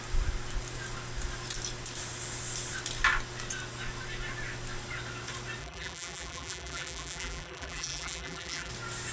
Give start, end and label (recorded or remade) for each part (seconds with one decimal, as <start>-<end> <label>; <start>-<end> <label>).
0.0-5.6 recorded; 5.6-8.7 remade; 8.7-9.1 recorded